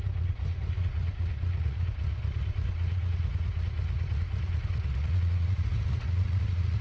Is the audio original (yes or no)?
no